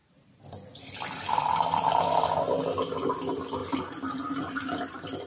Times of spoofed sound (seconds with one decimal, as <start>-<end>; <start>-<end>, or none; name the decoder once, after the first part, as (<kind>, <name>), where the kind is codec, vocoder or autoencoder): 0.0-3.1 (vocoder, BigVGAN v2); 3.6-5.3